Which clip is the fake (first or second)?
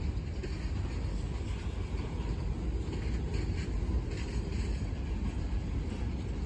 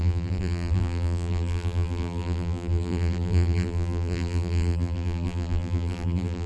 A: second